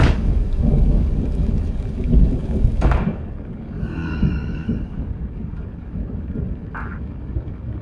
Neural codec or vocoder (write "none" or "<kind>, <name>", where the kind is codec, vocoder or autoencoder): codec, DAC